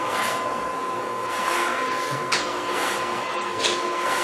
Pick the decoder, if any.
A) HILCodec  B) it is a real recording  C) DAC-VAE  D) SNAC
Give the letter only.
D